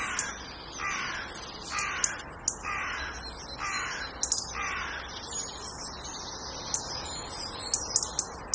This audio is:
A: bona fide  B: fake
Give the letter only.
A